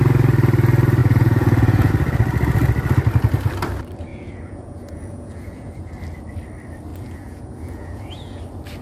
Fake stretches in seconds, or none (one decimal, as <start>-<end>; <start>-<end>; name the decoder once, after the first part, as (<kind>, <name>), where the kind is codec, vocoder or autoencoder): 1.0-1.9 (vocoder, Vocos); 4.1-5.9; 6.9-8.4